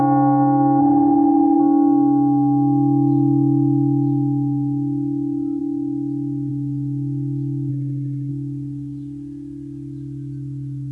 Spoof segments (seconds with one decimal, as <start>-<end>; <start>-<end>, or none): 0.8-1.6; 7.7-8.3